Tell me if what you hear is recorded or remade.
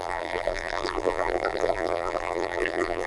remade